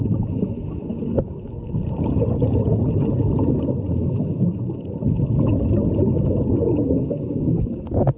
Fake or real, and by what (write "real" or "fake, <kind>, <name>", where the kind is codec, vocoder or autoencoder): real